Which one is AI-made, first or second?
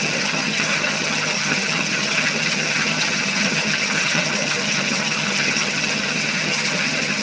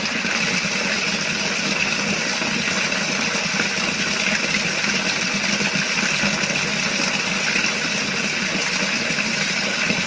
first